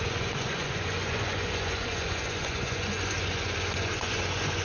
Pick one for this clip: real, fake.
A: fake